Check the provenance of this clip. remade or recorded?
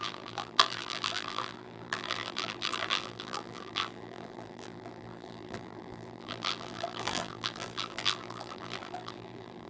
remade